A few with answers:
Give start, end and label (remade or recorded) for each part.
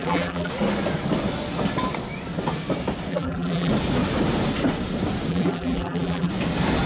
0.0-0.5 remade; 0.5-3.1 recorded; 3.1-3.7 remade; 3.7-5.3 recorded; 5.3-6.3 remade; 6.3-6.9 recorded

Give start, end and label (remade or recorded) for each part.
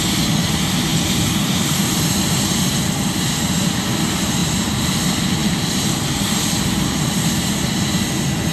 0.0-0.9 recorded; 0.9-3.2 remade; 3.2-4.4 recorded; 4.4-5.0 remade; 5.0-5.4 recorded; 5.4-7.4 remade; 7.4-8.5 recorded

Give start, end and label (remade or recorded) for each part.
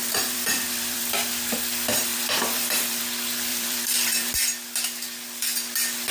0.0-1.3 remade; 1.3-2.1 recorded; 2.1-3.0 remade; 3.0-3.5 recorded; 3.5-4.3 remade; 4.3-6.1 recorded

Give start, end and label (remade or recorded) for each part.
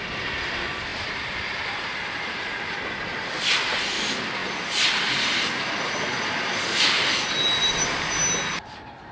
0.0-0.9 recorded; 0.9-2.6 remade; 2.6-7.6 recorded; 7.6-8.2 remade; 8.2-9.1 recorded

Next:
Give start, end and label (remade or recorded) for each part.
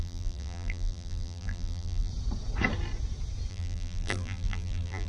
0.0-2.1 remade; 2.1-3.5 recorded; 3.5-5.1 remade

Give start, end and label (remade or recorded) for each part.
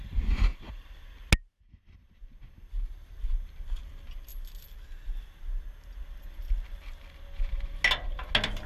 0.0-8.7 recorded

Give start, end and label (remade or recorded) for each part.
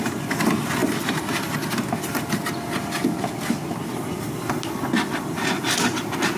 0.0-6.4 recorded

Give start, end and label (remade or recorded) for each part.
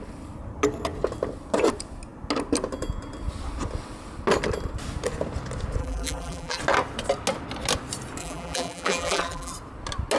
0.0-5.8 recorded; 5.8-6.6 remade; 6.6-8.2 recorded; 8.2-9.5 remade; 9.5-10.2 recorded